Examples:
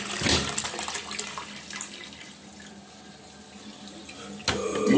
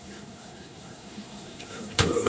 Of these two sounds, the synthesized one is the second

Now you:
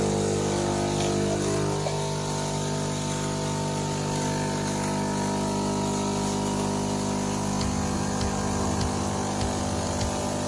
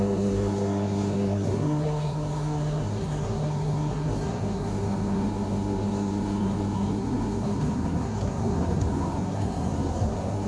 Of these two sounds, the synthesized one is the second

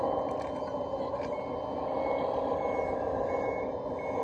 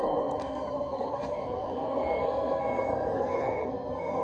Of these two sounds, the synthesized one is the second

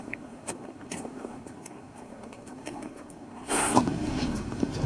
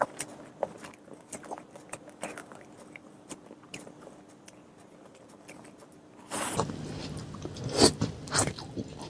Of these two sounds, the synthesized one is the first